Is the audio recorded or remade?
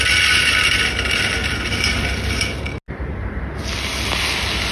recorded